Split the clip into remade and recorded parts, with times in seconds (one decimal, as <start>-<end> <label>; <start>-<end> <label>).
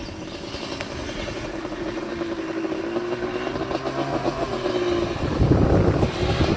0.0-1.0 recorded; 1.0-2.1 remade; 2.1-4.1 recorded; 4.1-4.7 remade; 4.7-6.6 recorded